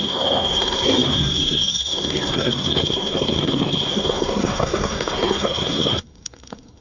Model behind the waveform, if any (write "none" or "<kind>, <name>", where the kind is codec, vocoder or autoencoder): codec, SNAC